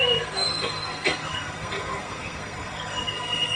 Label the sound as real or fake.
fake